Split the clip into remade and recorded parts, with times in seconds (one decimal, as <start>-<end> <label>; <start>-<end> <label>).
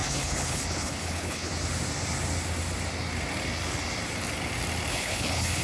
0.0-1.5 remade; 1.5-4.9 recorded; 4.9-5.6 remade